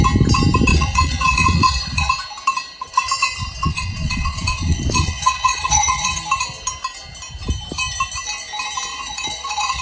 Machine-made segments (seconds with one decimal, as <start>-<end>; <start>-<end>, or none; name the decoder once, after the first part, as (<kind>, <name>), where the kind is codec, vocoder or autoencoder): 0.7-2.1 (vocoder, Vocos); 3.6-6.2; 8.9-9.8